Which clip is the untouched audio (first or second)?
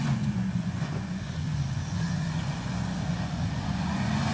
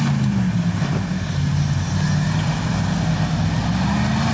second